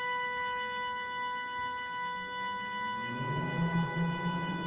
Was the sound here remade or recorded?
remade